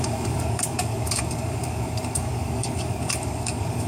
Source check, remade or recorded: remade